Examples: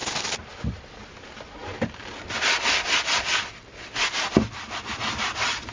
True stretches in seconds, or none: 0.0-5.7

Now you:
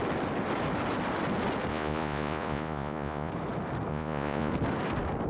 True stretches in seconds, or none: 0.0-1.7; 3.3-3.9; 4.5-5.3

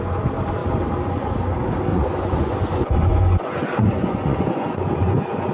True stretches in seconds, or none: 0.0-1.9

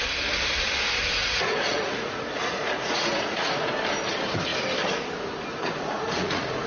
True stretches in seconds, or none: 0.0-1.2; 3.7-5.5

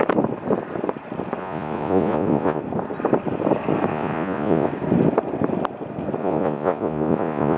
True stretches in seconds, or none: 0.0-1.4; 2.6-3.9; 4.7-6.2

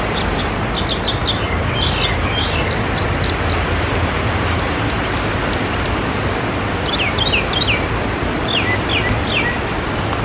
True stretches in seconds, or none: 0.0-10.2